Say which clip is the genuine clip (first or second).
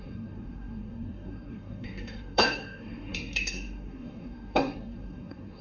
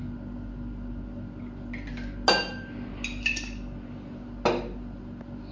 second